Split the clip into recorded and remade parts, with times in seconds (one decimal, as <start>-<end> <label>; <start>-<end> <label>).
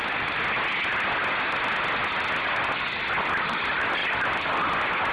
0.0-5.1 recorded